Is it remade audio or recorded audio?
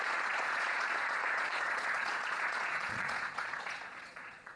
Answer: remade